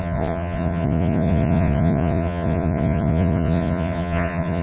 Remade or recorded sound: remade